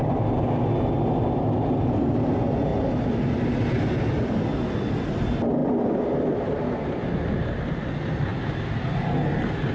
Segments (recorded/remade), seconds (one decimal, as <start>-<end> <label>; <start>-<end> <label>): 0.0-9.7 recorded